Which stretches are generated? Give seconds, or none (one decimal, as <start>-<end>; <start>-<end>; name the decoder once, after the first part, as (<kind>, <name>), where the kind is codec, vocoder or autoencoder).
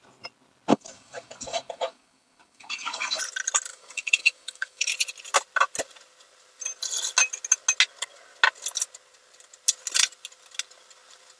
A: 0.7-3.2 (codec, DAC); 3.7-4.9